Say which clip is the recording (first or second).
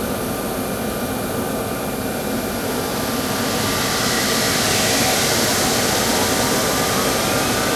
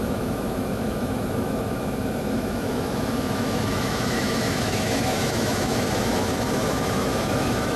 first